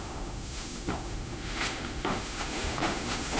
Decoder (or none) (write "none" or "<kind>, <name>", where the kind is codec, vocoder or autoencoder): autoencoder, DAC-VAE